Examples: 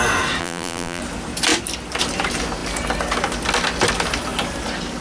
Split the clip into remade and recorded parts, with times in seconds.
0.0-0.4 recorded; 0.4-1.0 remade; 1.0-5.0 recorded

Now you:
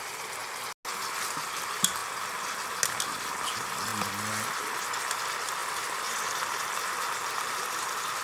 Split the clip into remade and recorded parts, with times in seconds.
0.0-0.4 remade; 0.4-1.4 recorded; 1.4-2.0 remade; 2.0-3.5 recorded; 3.5-3.9 remade; 3.9-5.1 recorded; 5.1-8.2 remade

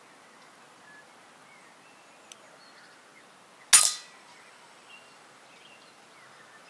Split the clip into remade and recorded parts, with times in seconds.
0.0-6.7 recorded

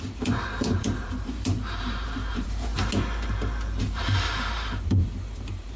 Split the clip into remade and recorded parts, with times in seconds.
0.0-2.7 remade; 2.7-3.8 recorded; 3.8-5.8 remade

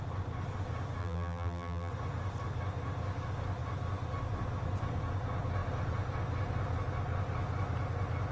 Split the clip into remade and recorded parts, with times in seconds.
0.0-1.0 recorded; 1.0-1.9 remade; 1.9-8.3 recorded

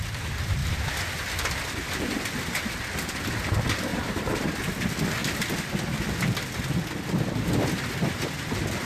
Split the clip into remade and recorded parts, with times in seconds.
0.0-0.6 recorded; 0.6-1.6 remade; 1.6-3.9 recorded; 3.9-4.6 remade; 4.6-8.9 recorded

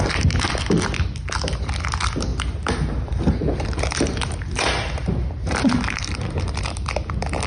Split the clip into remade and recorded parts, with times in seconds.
0.0-2.3 recorded; 2.3-6.6 remade; 6.6-7.5 recorded